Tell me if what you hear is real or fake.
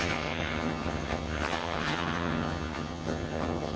fake